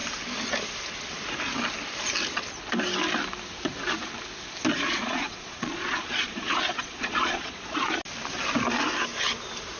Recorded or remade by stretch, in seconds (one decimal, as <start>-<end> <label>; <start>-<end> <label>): 0.0-4.7 recorded; 4.7-8.0 remade; 8.0-9.8 recorded